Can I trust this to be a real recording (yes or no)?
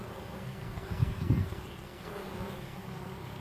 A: no